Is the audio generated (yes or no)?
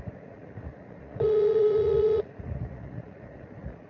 yes